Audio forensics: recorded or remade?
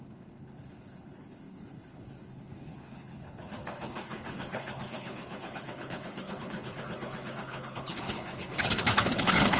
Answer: remade